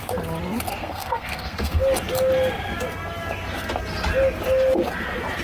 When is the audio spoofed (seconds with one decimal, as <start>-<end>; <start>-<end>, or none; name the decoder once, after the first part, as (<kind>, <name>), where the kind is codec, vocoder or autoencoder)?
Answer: 0.8-1.8 (codec, SNAC)